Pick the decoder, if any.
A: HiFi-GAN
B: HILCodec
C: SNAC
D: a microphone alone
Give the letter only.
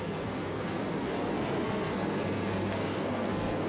C